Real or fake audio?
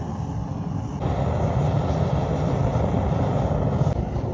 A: real